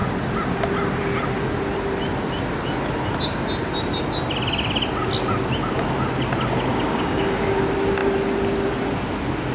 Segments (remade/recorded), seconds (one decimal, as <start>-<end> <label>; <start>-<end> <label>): 0.0-6.7 recorded; 6.7-7.6 remade; 7.6-9.5 recorded